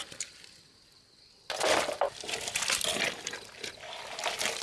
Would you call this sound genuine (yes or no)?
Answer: yes